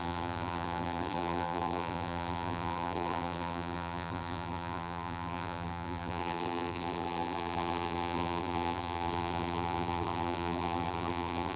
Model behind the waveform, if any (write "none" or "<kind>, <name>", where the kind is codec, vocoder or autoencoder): vocoder, BigVGAN v2